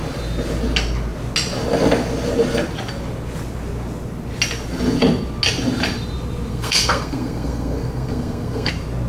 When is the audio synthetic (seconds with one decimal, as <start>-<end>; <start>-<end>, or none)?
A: 6.5-8.7